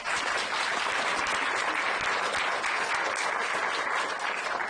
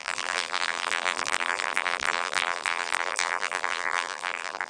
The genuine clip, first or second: first